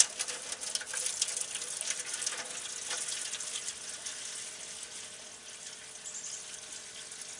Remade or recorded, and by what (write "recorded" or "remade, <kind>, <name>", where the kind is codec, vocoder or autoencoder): recorded